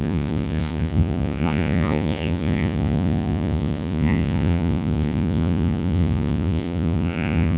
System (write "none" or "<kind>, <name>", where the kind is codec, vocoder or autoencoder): vocoder, Vocos